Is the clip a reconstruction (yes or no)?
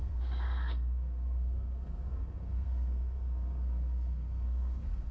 yes